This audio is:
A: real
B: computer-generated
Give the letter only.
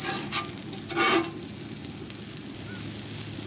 A